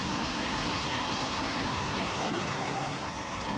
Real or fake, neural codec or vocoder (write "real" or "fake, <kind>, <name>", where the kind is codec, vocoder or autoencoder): fake, codec, SNAC